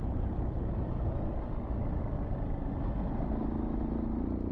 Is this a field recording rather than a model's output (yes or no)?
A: yes